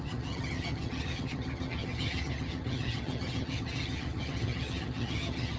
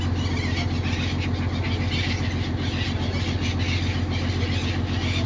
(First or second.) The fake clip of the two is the first